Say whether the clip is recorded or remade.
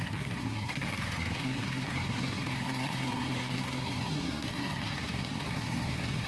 remade